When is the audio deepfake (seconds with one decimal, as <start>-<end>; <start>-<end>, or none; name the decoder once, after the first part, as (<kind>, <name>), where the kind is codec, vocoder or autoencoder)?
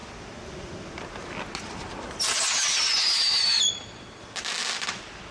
none